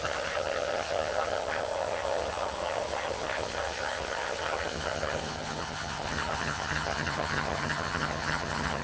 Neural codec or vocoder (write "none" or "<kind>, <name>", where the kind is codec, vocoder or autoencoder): vocoder, HiFi-GAN